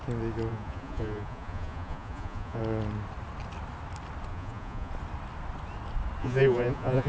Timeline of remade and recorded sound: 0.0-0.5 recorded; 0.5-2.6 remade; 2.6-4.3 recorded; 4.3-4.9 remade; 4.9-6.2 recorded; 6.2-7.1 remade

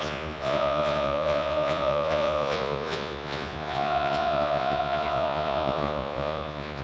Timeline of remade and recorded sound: 0.0-6.8 remade

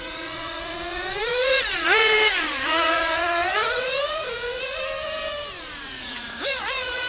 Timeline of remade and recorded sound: 0.0-4.8 remade; 4.8-5.6 recorded; 5.6-7.1 remade

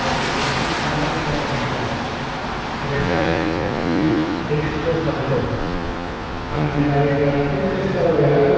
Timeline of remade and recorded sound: 0.0-3.0 recorded; 3.0-4.4 remade; 4.4-5.6 recorded; 5.6-6.8 remade; 6.8-8.6 recorded

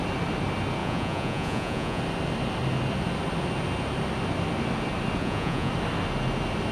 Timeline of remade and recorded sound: 0.0-0.8 recorded; 0.8-2.0 remade; 2.0-5.2 recorded; 5.2-5.7 remade; 5.7-6.7 recorded

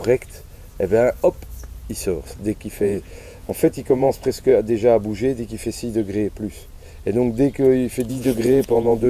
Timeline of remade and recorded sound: 0.0-2.7 recorded; 2.7-4.5 remade; 4.5-8.1 recorded; 8.1-9.1 remade